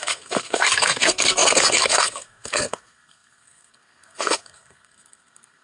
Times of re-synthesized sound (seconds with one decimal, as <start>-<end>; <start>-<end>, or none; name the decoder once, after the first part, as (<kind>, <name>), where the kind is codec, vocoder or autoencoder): 0.0-5.6 (codec, SNAC)